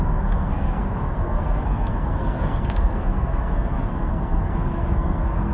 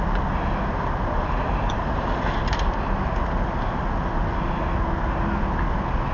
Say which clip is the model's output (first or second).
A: first